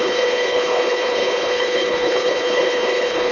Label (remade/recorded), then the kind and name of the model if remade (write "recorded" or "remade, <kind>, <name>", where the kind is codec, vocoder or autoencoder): remade, codec, HILCodec